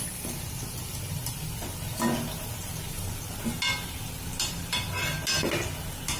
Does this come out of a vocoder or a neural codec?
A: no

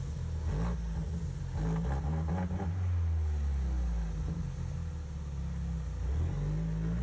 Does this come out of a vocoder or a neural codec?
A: no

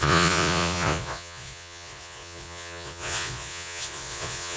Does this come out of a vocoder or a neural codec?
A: yes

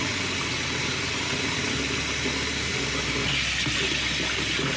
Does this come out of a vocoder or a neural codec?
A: no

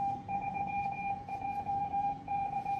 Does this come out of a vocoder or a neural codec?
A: yes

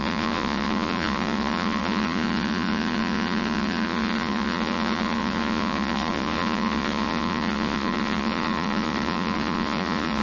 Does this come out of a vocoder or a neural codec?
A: yes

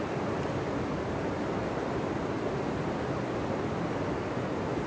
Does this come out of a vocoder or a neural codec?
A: no